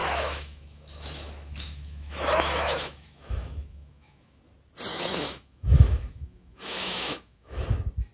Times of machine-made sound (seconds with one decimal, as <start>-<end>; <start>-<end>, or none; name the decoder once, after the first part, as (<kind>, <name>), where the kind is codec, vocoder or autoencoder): 0.0-4.4 (autoencoder, DAC-VAE); 4.9-7.6